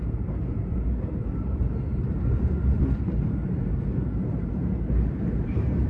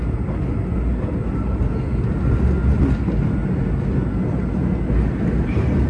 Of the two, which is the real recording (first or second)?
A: second